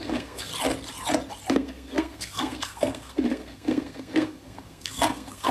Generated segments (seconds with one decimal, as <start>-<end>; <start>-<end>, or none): 0.0-0.5; 1.5-5.5

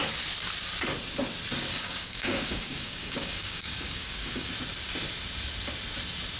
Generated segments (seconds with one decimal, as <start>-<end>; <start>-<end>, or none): 1.7-4.5

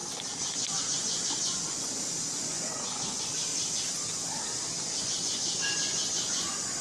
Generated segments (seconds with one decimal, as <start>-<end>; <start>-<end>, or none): 0.0-3.5; 5.0-6.8